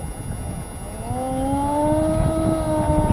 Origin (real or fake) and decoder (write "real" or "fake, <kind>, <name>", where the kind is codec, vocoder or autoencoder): real